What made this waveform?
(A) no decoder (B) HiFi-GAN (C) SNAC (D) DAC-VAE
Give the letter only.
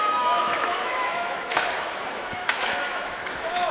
D